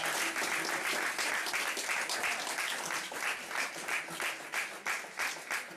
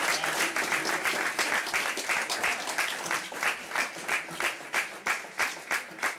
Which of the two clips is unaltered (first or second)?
first